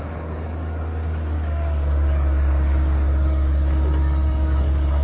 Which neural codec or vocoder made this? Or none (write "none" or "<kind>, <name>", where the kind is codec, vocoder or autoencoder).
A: codec, DAC